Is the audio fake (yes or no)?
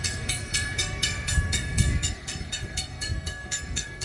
yes